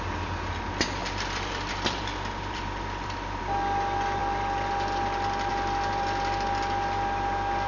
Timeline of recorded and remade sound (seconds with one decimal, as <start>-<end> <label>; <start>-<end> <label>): 0.0-1.0 recorded; 1.0-3.4 remade; 3.4-7.7 recorded